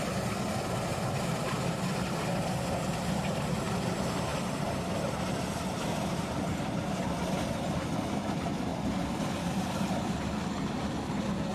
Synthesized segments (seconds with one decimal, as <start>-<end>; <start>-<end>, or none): none